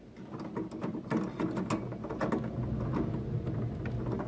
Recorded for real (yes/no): yes